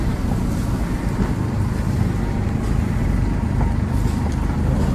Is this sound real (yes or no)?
yes